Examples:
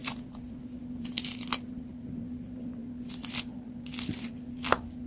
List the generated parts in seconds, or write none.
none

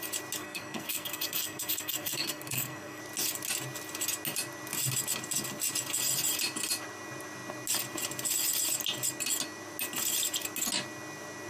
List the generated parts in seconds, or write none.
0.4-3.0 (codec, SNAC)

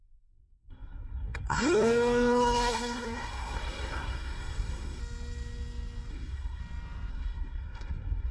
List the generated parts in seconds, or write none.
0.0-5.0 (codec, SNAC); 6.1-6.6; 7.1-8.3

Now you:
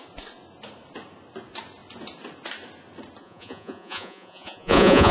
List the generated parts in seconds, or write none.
3.2-5.1 (vocoder, Vocos)

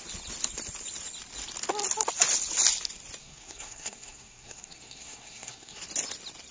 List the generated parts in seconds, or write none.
3.2-5.8 (codec, SNAC)

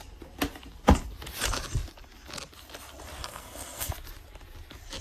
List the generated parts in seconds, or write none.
3.2-3.9 (codec, SNAC)